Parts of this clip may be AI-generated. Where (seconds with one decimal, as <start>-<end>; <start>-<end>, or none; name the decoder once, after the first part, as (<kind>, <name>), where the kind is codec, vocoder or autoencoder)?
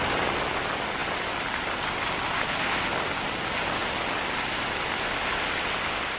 none